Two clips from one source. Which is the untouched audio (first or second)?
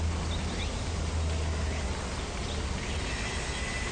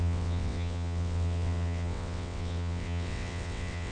first